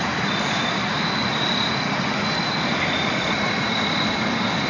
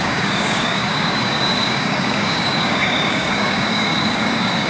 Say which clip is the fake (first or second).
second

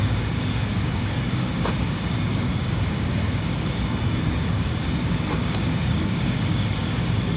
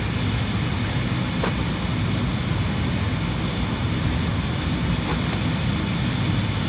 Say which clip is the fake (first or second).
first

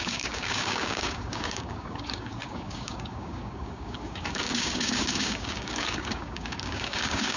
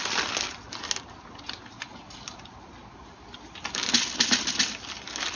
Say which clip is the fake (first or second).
first